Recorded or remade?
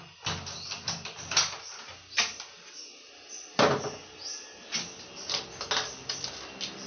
recorded